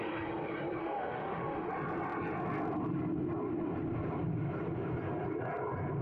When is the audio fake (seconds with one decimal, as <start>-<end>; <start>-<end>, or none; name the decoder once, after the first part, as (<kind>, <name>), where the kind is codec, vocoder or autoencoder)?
0.8-1.7 (autoencoder, DAC-VAE)